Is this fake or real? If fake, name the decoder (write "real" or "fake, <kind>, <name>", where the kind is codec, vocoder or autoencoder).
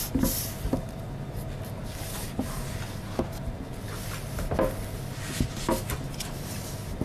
real